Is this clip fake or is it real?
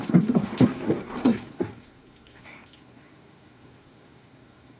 fake